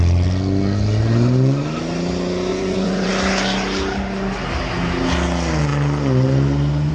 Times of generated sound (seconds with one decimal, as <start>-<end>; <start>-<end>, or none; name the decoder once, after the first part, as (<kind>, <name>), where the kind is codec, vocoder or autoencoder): 2.5-3.1 (vocoder, Vocos)